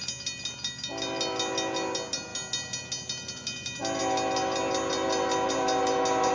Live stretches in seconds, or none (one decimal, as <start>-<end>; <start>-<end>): 0.0-6.3